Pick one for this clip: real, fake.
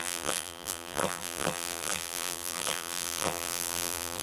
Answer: fake